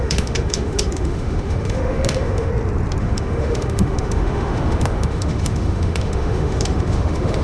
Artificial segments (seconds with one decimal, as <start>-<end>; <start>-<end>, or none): 0.0-2.5; 3.0-7.4